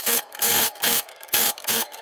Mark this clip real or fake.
fake